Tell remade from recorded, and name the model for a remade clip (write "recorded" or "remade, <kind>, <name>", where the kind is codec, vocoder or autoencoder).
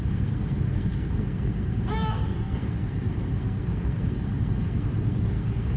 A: remade, codec, SNAC